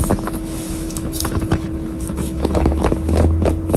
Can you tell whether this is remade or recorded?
remade